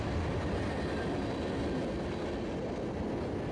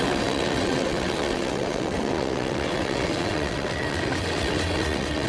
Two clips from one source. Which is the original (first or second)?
first